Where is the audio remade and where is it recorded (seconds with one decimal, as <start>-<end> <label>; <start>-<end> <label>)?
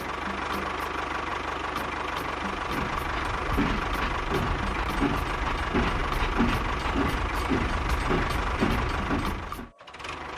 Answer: 0.0-10.4 recorded